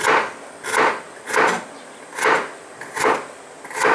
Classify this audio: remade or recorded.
recorded